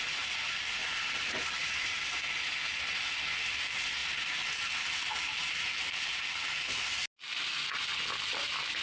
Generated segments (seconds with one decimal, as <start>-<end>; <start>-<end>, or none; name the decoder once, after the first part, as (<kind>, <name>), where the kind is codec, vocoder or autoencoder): none